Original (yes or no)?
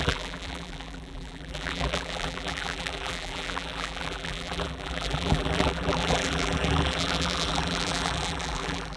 no